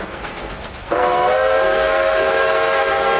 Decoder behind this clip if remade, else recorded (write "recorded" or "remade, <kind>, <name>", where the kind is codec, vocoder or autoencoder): remade, codec, SNAC